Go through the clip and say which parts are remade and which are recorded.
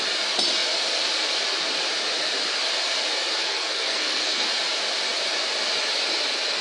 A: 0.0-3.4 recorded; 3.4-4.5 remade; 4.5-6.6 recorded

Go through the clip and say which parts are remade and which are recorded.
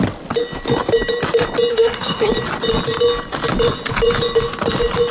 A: 0.0-1.7 recorded; 1.7-2.3 remade; 2.3-5.1 recorded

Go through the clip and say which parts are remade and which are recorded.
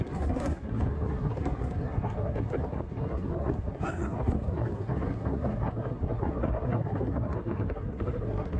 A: 0.0-8.6 remade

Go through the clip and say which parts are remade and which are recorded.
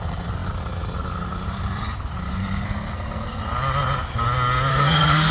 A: 0.0-2.4 recorded; 2.4-3.4 remade; 3.4-4.7 recorded; 4.7-5.3 remade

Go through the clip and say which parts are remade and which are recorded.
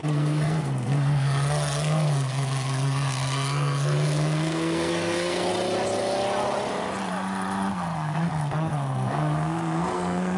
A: 0.0-5.5 remade; 5.5-7.7 recorded; 7.7-10.4 remade